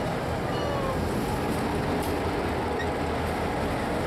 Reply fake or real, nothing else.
real